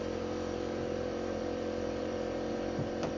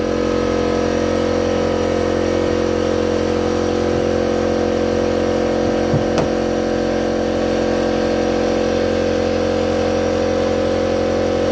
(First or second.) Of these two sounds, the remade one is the first